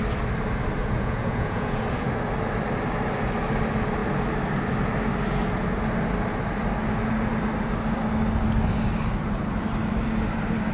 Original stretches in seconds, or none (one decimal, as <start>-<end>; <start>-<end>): 0.0-0.8; 1.8-10.7

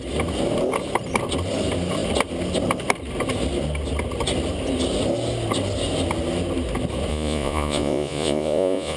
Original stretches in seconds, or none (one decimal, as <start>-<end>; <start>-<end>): 0.0-7.1

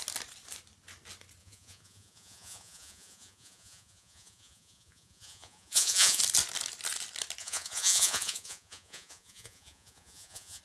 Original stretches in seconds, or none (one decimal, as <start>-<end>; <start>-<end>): 0.0-1.4; 6.2-7.4

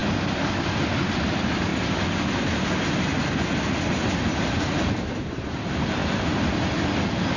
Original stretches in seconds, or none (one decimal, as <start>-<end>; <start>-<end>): 0.0-7.4

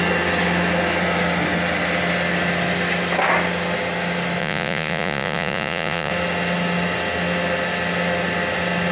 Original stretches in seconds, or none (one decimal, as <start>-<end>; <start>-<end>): 0.0-4.4; 6.1-8.9